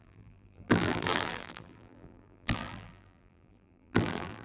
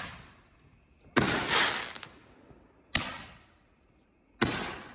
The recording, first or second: second